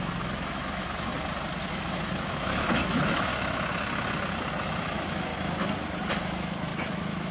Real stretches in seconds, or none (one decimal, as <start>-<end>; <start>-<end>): 1.1-1.7; 3.3-4.5; 5.3-6.2

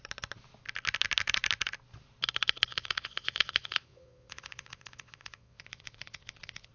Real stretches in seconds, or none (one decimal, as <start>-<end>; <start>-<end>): 0.0-2.7

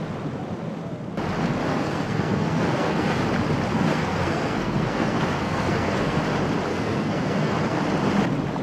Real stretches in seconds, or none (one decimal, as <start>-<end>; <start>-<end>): 0.0-1.7; 3.2-3.7; 6.2-6.7; 7.8-8.6

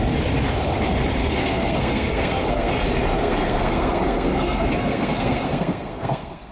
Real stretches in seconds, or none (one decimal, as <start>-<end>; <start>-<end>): 0.0-1.2; 2.7-3.2

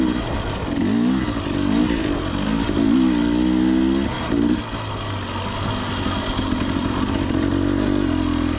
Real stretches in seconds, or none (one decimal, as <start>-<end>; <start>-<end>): 0.0-8.6

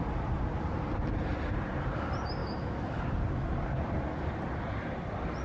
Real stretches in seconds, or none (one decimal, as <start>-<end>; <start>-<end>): 0.0-2.4; 3.0-5.4